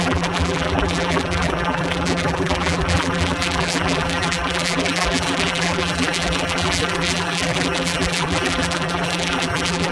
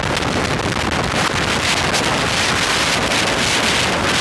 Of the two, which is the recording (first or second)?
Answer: second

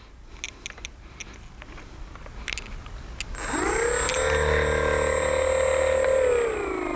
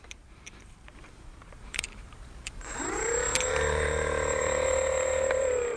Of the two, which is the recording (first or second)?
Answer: first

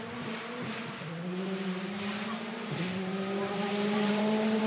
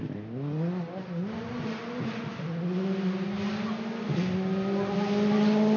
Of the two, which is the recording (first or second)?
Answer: second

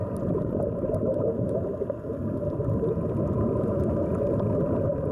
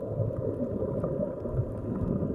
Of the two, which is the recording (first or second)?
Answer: second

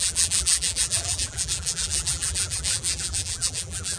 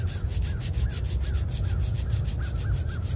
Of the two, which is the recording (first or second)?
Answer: second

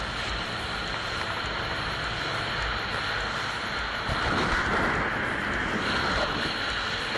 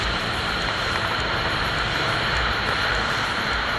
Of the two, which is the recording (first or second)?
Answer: first